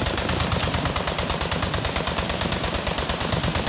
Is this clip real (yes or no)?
yes